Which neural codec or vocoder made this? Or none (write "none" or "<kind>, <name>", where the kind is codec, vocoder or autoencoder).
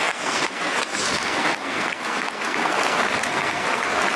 codec, SNAC